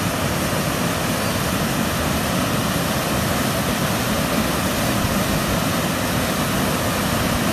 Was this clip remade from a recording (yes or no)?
no